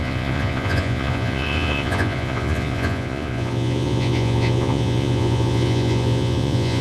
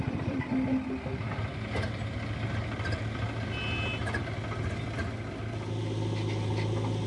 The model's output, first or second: first